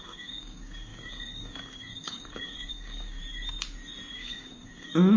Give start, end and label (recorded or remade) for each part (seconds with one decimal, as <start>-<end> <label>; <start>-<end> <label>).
0.0-3.2 remade; 3.2-4.1 recorded; 4.1-5.2 remade